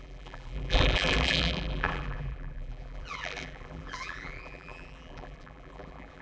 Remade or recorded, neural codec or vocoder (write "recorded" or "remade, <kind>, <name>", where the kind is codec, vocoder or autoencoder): remade, vocoder, BigVGAN v2